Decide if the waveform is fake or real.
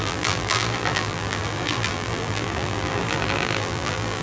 fake